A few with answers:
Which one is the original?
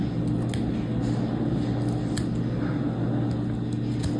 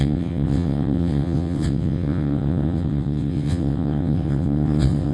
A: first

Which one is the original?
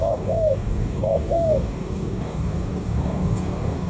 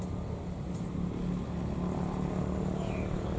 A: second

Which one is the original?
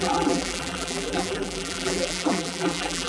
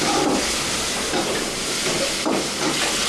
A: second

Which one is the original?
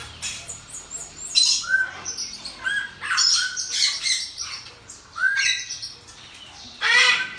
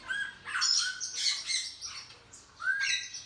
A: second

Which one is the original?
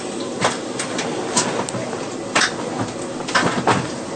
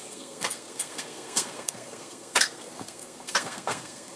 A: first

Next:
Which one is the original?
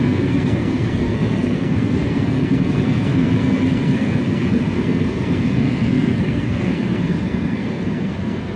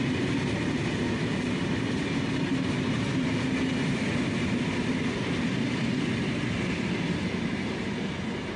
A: second